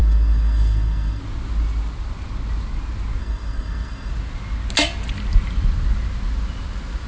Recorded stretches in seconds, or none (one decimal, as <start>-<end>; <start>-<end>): 1.2-3.2; 4.1-7.1